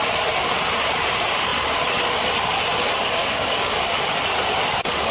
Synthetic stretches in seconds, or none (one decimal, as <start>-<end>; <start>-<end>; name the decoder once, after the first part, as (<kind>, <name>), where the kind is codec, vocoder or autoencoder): 3.2-3.9 (codec, DAC)

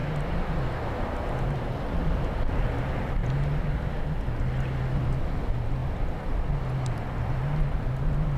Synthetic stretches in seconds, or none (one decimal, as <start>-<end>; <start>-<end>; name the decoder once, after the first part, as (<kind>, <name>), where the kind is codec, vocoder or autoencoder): none

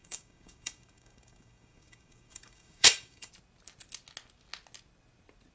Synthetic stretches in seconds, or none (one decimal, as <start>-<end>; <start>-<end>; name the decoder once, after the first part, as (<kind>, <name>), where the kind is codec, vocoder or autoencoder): 0.0-3.3 (codec, DAC)

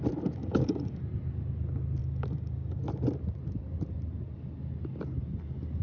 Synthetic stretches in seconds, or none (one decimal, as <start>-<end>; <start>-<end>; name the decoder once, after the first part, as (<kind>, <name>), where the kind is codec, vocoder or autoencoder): 0.4-1.0 (codec, DAC); 2.0-2.8

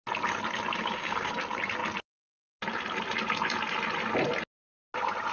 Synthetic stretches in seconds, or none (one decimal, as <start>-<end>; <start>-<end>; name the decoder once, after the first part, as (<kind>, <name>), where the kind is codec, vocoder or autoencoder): 0.8-1.4 (codec, DAC)

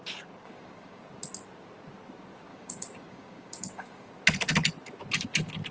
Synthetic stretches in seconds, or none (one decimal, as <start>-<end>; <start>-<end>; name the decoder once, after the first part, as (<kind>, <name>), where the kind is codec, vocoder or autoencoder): 0.4-1.0 (codec, DAC); 2.5-4.1